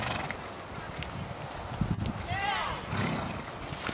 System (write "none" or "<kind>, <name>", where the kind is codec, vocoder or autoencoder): none